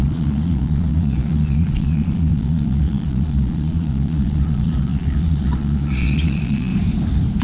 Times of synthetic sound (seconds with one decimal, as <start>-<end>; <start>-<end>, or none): 0.0-6.7